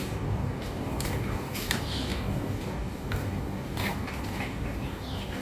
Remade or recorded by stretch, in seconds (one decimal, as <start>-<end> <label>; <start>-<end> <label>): 0.0-5.4 remade